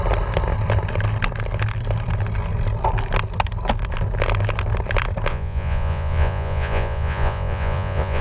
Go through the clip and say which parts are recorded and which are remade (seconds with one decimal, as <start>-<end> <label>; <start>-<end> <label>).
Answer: 0.0-5.3 recorded; 5.3-8.2 remade